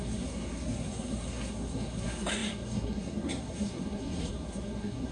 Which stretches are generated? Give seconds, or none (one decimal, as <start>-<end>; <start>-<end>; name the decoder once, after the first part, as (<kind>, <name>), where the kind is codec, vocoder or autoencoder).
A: 0.0-5.1 (codec, SNAC)